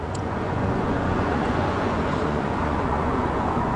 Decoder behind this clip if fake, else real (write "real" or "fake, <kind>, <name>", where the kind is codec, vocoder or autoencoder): fake, vocoder, Vocos